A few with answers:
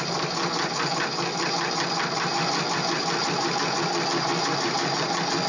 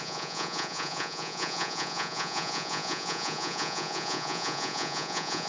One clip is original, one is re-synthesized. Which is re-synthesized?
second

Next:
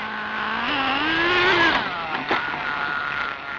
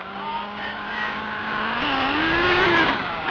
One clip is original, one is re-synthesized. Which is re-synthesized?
second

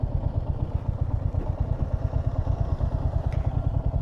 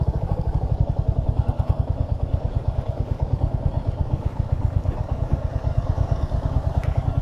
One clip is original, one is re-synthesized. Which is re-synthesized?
second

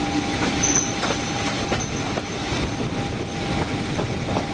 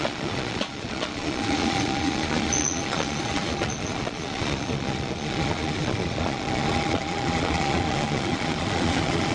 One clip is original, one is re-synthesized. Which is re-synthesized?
second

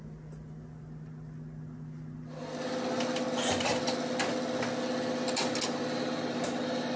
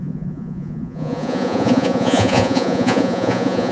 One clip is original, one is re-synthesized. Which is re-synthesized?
second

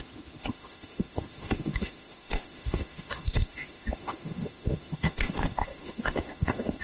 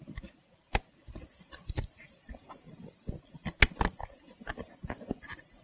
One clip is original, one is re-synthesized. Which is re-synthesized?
first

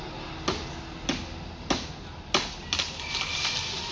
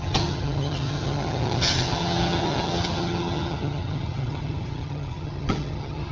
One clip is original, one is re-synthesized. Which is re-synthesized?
second